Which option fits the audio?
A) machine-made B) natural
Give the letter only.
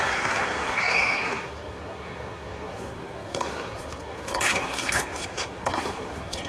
A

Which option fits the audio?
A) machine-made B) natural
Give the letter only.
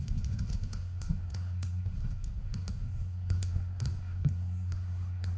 A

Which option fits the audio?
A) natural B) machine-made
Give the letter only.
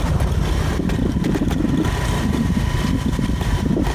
A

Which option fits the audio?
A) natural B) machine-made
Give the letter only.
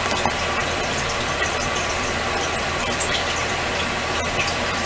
B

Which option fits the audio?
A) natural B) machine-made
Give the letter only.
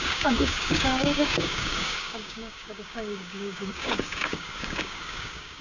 B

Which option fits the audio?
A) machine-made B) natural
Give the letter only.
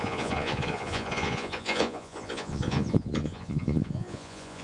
A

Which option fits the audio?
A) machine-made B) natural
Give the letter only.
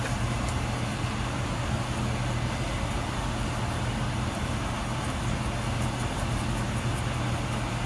B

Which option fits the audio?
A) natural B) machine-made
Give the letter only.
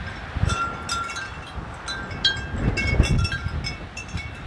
A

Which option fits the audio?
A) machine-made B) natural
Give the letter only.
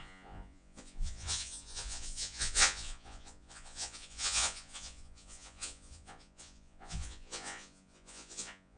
A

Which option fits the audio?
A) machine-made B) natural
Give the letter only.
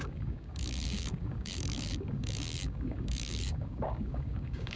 A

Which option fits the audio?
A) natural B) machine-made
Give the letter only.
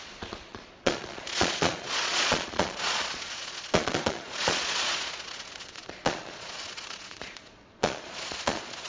B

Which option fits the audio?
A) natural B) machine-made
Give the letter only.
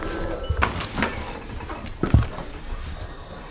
B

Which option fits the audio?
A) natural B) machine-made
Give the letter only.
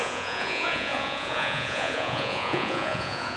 B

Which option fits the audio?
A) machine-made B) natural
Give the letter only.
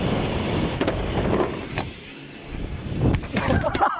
B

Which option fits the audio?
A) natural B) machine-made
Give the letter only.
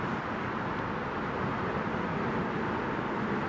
A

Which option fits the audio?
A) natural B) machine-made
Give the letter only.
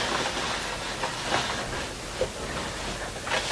A